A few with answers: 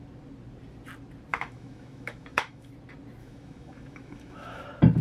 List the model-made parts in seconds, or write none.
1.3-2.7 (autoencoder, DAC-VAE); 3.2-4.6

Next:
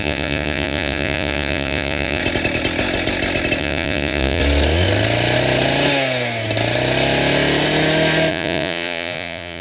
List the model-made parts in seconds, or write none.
0.0-2.2 (vocoder, Vocos); 3.6-4.4; 8.3-9.6

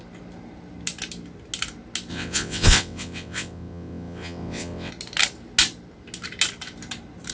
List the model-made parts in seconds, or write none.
2.1-4.9 (vocoder, WaveNeXt)

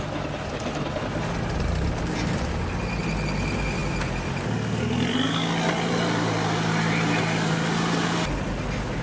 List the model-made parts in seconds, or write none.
none

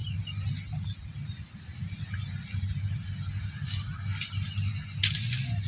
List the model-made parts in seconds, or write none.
none

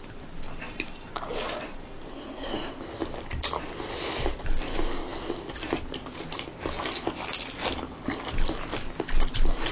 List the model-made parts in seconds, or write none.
2.1-2.8 (codec, SNAC)

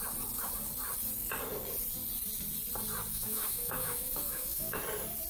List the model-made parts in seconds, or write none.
3.1-4.8 (autoencoder, DAC-VAE)

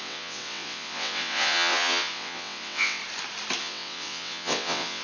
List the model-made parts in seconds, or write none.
0.0-3.0 (vocoder, WaveNeXt); 3.6-5.0